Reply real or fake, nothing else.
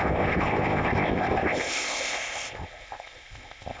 fake